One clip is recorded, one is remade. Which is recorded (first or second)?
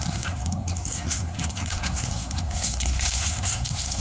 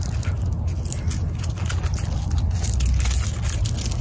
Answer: second